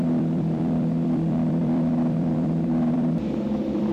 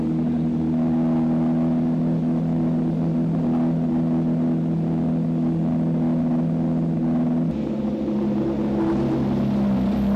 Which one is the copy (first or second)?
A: first